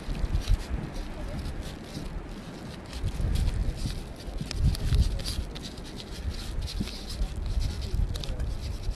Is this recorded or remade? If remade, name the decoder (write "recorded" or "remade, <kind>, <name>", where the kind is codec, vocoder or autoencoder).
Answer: recorded